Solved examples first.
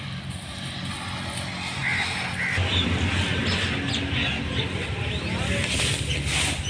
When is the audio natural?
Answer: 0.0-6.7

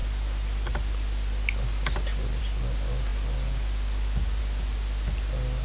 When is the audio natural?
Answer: 0.0-5.6

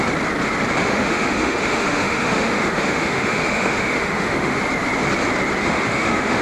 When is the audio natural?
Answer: 0.0-0.8; 4.6-5.6